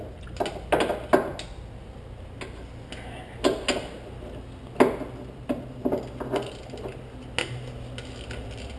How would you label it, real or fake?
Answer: real